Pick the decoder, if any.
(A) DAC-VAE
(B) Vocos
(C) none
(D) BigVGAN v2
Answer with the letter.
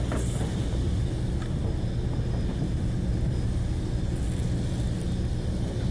C